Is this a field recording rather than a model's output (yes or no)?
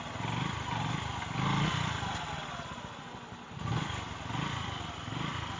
yes